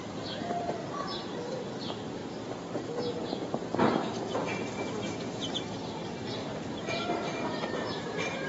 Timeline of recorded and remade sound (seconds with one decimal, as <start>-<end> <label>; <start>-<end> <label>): 0.0-6.4 recorded; 6.4-8.5 remade